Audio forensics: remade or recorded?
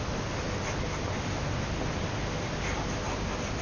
recorded